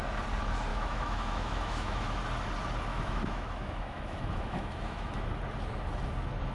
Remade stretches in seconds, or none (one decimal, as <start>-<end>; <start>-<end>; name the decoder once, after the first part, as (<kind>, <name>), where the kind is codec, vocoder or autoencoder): 0.7-2.2 (autoencoder, DAC-VAE); 2.9-5.2